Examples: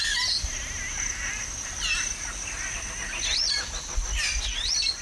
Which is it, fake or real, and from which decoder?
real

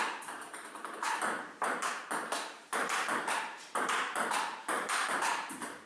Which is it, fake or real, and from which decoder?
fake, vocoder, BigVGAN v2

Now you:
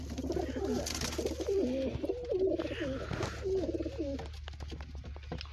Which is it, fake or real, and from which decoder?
real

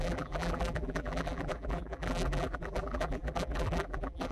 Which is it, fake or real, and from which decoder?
fake, vocoder, BigVGAN v2